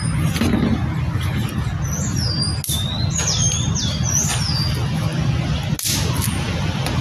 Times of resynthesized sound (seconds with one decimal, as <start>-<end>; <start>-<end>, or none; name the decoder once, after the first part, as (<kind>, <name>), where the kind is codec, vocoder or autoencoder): none